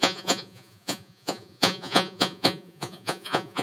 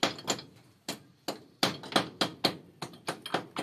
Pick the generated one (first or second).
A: first